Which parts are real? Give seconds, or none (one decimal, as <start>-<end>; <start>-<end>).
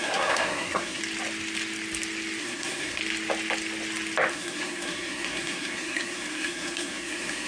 1.0-2.4; 3.0-4.3